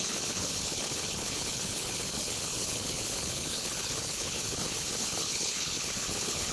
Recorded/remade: remade